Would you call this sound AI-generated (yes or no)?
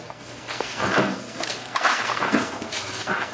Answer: yes